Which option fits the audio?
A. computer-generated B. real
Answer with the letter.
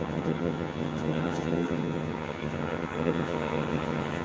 A